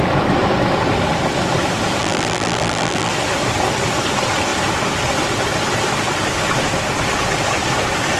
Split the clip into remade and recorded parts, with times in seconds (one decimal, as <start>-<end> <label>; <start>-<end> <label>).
0.0-2.0 recorded; 2.0-3.1 remade; 3.1-8.2 recorded